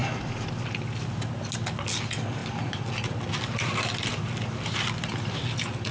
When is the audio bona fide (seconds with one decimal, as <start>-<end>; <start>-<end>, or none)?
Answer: 0.0-5.9